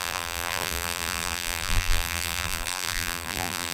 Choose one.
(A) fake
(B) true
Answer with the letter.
A